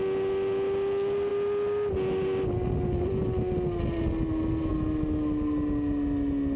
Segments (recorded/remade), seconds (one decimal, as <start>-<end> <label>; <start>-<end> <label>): 0.0-6.6 recorded